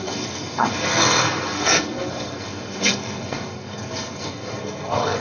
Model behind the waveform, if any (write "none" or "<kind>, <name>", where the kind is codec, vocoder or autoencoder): codec, SNAC